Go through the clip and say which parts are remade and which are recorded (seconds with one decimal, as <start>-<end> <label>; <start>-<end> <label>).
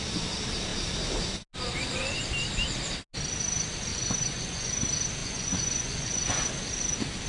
0.0-3.9 recorded; 3.9-4.7 remade; 4.7-5.2 recorded; 5.2-6.5 remade; 6.5-7.3 recorded